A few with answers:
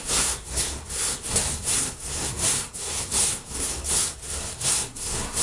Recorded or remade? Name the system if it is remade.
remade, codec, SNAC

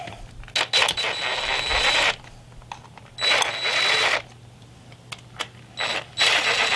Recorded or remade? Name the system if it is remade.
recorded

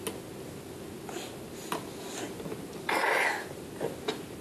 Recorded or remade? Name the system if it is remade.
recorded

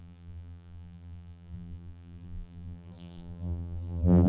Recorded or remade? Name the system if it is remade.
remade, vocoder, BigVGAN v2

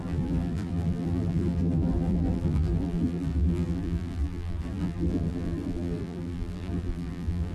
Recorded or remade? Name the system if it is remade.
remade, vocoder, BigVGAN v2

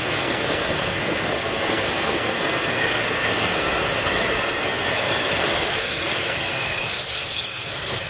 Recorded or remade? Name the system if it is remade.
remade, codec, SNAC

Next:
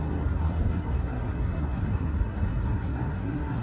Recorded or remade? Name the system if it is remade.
remade, codec, SNAC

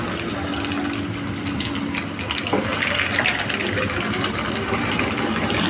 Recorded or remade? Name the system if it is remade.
remade, vocoder, BigVGAN v2